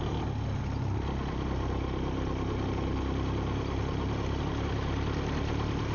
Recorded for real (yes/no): yes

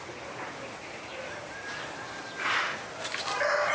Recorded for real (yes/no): yes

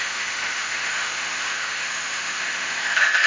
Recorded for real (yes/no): no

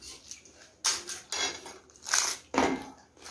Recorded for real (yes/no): yes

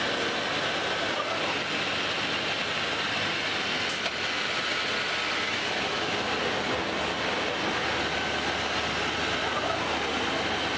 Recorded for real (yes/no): yes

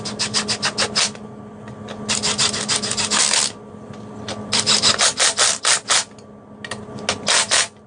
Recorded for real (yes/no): yes